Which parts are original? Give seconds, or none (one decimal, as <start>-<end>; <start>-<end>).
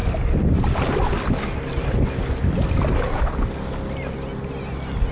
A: 0.0-5.1